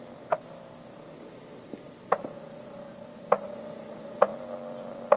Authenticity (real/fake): real